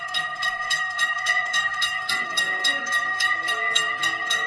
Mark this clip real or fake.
fake